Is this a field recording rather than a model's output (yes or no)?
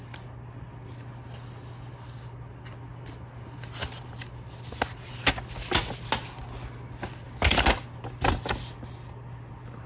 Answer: yes